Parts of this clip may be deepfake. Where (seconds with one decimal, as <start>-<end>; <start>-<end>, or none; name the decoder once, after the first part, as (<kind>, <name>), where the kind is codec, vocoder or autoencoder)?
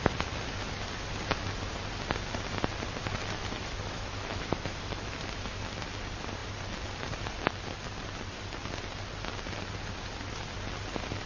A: 3.4-5.2 (autoencoder, DAC-VAE)